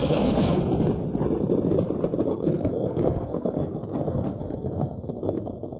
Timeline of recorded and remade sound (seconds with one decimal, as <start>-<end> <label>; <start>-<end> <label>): 0.0-0.6 remade; 0.6-2.3 recorded; 2.3-5.8 remade